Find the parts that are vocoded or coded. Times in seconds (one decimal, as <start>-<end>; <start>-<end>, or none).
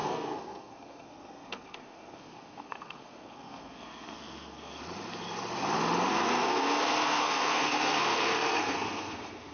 0.0-4.8; 6.1-9.5